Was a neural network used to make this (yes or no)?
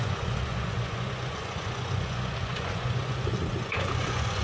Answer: yes